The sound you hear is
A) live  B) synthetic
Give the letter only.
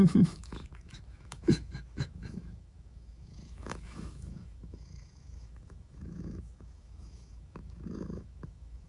B